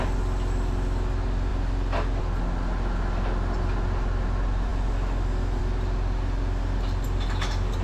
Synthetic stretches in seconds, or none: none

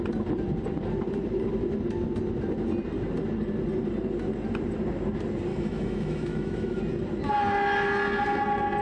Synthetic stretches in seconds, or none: 5.5-6.8

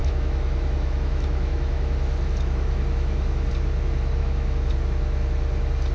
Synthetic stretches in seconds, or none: 0.0-3.5; 4.2-4.7

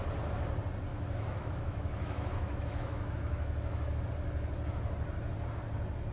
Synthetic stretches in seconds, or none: 0.9-4.0

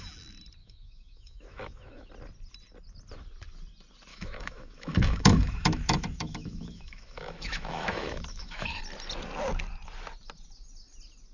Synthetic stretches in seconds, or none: 0.6-2.1; 4.1-8.8